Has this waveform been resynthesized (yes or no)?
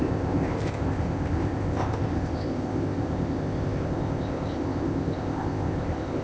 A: yes